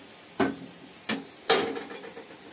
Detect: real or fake real